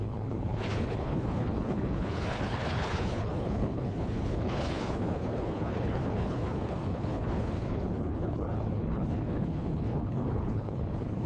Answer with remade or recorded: remade